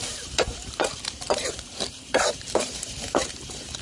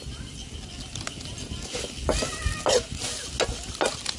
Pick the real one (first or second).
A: second